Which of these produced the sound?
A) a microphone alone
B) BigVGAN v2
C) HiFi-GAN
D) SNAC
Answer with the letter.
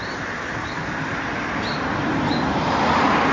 A